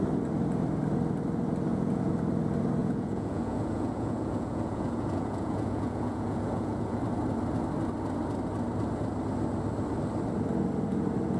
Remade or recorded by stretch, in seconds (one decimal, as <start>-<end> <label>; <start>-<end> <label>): 0.0-1.7 recorded; 1.7-2.2 remade; 2.2-2.8 recorded; 2.8-7.0 remade; 7.0-11.4 recorded